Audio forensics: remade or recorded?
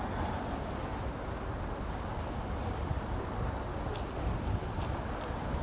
recorded